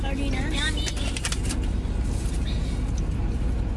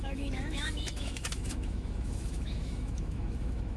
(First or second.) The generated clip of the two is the second